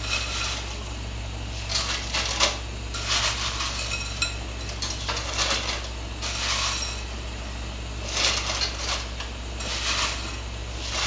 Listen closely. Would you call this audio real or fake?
real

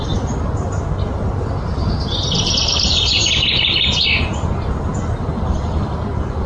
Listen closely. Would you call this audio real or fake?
real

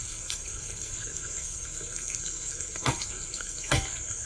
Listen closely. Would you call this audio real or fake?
fake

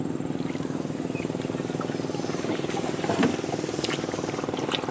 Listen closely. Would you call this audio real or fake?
real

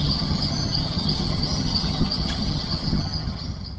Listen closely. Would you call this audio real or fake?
fake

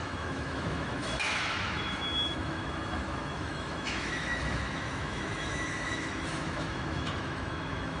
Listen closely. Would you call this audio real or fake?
fake